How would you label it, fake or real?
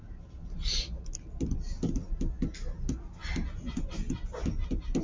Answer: real